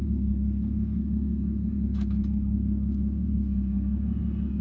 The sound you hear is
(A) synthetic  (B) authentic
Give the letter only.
A